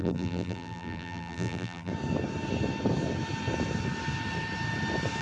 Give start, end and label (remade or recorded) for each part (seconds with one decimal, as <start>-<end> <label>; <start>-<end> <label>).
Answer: 0.0-1.9 remade; 1.9-5.2 recorded